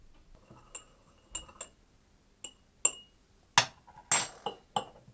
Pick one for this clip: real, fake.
real